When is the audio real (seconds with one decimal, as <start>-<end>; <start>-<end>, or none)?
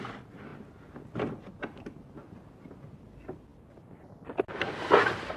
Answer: 0.0-5.4